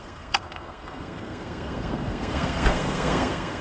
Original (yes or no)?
no